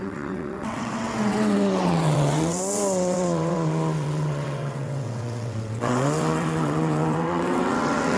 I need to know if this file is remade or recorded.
remade